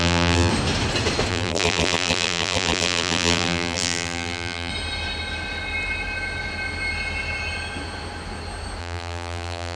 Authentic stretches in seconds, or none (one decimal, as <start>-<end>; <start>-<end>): 0.5-1.3; 4.7-8.8